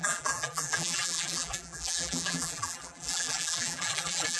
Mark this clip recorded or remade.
remade